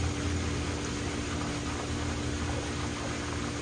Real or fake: real